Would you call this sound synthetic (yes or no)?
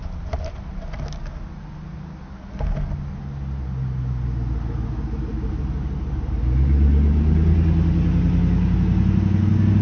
no